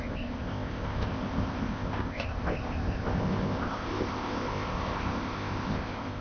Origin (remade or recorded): remade